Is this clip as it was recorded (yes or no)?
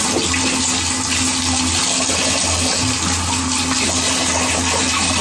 yes